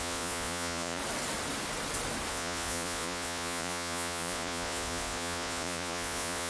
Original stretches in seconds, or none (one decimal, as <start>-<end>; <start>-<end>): 1.0-2.3